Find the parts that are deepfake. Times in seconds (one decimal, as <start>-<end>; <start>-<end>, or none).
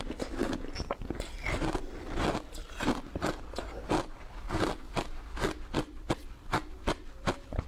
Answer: none